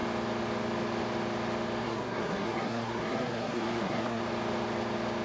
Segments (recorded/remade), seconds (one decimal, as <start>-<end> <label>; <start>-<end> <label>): 0.0-1.8 recorded; 1.8-4.2 remade; 4.2-5.2 recorded